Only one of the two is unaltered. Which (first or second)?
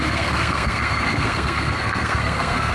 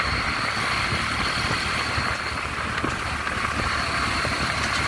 second